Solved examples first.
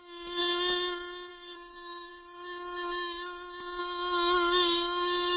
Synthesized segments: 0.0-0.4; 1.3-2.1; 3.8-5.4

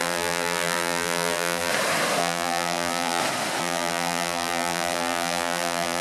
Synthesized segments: 0.0-1.7; 2.2-3.2; 3.6-6.0

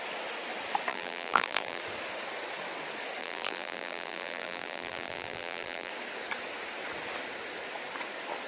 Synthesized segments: 0.9-1.8; 3.2-5.9

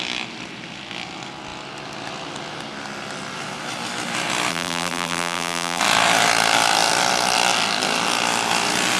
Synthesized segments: 4.5-5.8

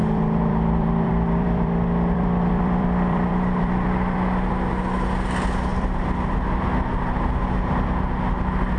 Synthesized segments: 0.0-4.7; 5.7-6.4

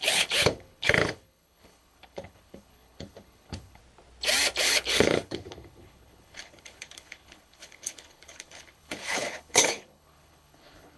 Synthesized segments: 0.0-3.8; 4.6-11.0